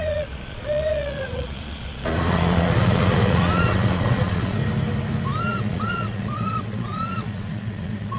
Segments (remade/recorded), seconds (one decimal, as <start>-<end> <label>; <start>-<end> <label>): 0.0-4.6 remade; 4.6-5.4 recorded; 5.4-8.2 remade